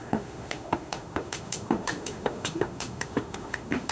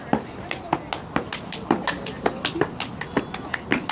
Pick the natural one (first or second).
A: second